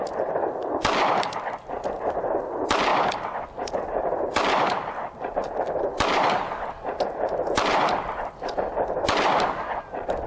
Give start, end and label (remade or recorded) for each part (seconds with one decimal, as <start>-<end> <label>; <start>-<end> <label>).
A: 0.0-10.3 recorded